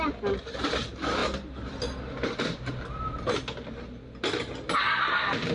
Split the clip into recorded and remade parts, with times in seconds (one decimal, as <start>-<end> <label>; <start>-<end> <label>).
0.0-5.5 recorded